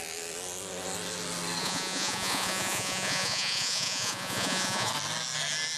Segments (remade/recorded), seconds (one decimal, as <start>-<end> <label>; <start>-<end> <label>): 0.0-1.6 recorded; 1.6-4.9 remade; 4.9-5.8 recorded